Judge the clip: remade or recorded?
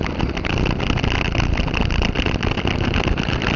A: recorded